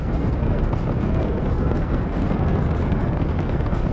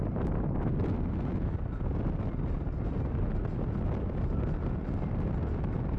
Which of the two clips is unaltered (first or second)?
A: second